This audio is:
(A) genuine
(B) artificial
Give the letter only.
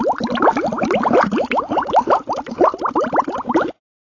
A